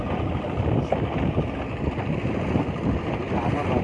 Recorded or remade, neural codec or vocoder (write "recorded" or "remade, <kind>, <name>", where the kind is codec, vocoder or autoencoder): recorded